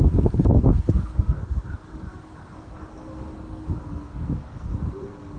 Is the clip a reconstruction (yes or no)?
yes